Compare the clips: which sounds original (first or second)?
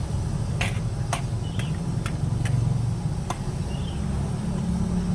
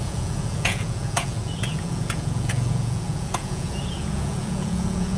first